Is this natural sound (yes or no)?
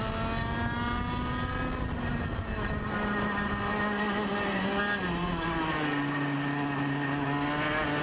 yes